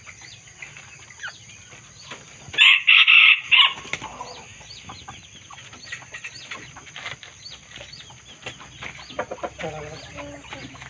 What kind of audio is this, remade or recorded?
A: recorded